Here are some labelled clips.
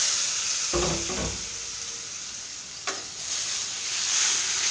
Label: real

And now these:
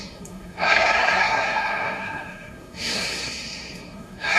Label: fake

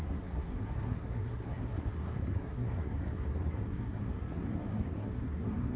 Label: fake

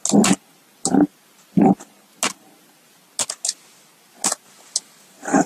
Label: real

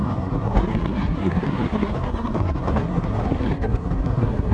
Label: fake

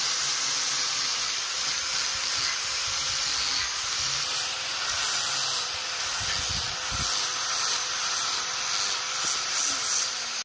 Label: real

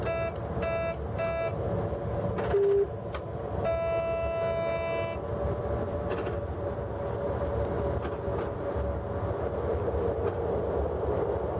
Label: real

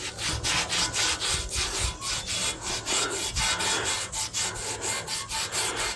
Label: real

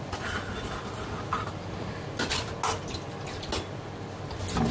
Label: real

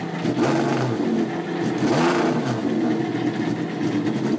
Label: real